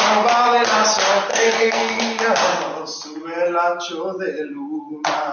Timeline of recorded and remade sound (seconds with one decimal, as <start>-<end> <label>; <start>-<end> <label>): 0.0-1.3 recorded; 1.3-2.0 remade; 2.0-5.3 recorded

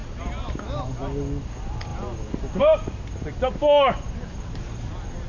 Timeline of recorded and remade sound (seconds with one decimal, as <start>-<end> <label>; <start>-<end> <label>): 0.0-5.3 recorded

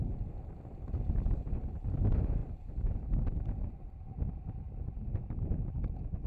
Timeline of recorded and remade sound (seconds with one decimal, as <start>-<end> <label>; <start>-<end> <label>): 0.0-2.4 recorded; 2.4-3.1 remade; 3.1-6.3 recorded

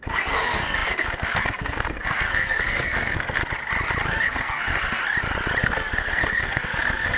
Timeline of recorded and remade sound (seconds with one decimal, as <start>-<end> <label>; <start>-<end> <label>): 0.0-3.4 remade; 3.4-4.1 recorded; 4.1-5.0 remade; 5.0-5.6 recorded; 5.6-7.2 remade

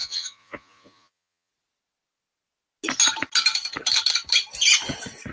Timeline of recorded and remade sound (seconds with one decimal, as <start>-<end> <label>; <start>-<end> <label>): 0.0-1.5 remade; 1.5-5.3 recorded

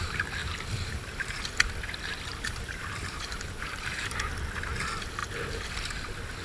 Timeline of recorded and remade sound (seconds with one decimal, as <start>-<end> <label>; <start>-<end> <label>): 0.0-0.4 recorded; 0.4-1.4 remade; 1.4-2.3 recorded; 2.3-4.3 remade; 4.3-6.4 recorded